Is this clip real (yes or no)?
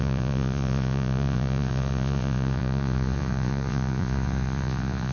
no